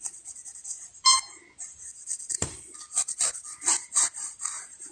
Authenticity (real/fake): real